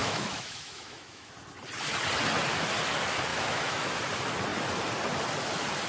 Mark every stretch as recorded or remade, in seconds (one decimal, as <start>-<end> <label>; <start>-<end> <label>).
0.0-1.3 remade; 1.3-3.3 recorded; 3.3-4.0 remade; 4.0-5.9 recorded